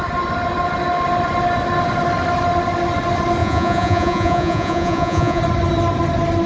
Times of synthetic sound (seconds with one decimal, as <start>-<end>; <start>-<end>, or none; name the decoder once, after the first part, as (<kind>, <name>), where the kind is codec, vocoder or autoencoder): 3.4-5.4 (vocoder, Vocos)